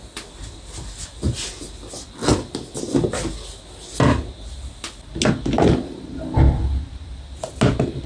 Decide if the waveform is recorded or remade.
recorded